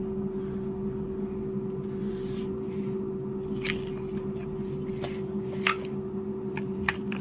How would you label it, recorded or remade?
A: recorded